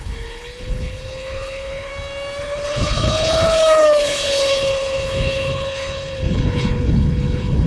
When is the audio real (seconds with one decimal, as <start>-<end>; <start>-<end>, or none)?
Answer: 1.9-2.4